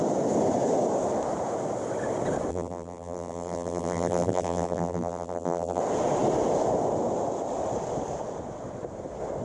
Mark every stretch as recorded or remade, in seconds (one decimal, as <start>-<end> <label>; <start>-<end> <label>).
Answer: 0.0-2.5 recorded; 2.5-5.8 remade; 5.8-9.4 recorded